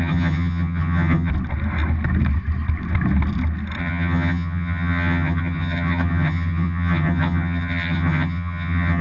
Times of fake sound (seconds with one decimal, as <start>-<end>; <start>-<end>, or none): 0.0-1.3; 3.8-9.0